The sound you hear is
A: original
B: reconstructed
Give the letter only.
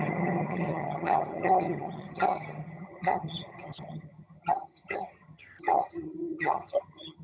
B